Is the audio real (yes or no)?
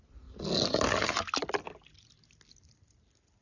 yes